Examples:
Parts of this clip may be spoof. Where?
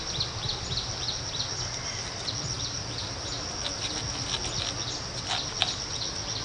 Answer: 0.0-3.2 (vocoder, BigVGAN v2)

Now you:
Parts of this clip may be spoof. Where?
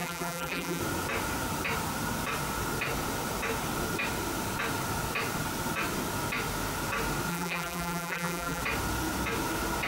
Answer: 0.0-0.8 (vocoder, BigVGAN v2); 7.3-8.6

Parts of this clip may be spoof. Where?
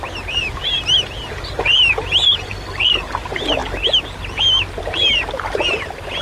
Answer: none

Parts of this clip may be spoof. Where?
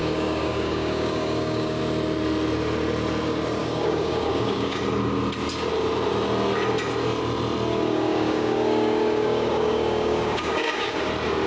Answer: 0.0-1.8 (codec, DAC); 3.6-4.8; 7.7-11.1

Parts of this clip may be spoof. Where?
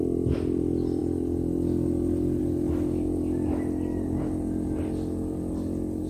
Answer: none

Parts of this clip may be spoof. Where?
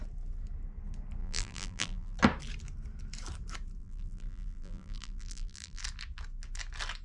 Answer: 1.2-2.2 (vocoder, BigVGAN v2); 3.8-5.8